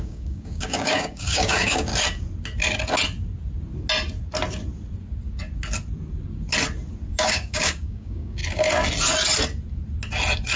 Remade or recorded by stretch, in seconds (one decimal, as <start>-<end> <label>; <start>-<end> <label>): 0.0-1.9 remade; 1.9-7.1 recorded; 7.1-8.4 remade; 8.4-10.6 recorded